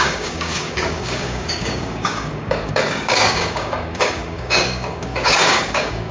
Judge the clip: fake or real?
fake